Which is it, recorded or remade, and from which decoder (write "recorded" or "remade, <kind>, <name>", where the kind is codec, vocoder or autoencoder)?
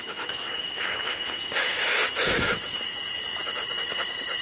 remade, autoencoder, DAC-VAE